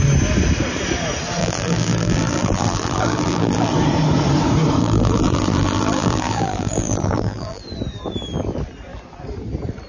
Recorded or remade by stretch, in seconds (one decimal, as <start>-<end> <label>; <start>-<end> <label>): 0.0-1.4 recorded; 1.4-3.7 remade; 3.7-4.8 recorded; 4.8-7.6 remade; 7.6-9.9 recorded